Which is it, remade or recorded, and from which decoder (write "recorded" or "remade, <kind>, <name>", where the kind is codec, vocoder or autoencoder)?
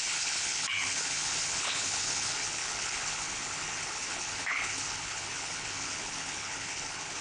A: remade, codec, HILCodec